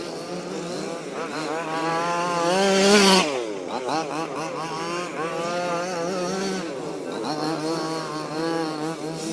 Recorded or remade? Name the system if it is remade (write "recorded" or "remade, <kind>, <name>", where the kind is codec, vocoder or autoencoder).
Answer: recorded